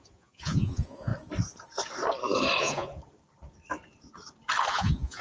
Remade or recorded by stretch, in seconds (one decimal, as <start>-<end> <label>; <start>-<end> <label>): 0.0-1.1 remade; 1.1-2.6 recorded; 2.6-3.0 remade; 3.0-4.7 recorded; 4.7-5.2 remade